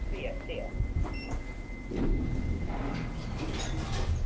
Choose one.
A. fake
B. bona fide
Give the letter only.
B